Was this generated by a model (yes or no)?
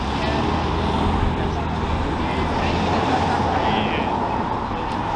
no